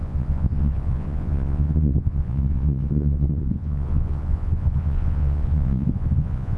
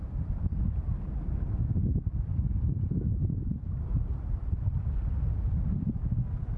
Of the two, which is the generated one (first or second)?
first